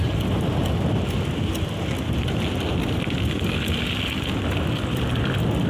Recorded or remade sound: recorded